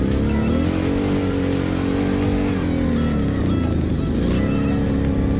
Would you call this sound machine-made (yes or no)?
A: no